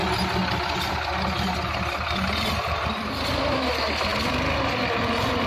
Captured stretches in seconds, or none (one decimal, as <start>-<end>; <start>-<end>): 0.0-5.5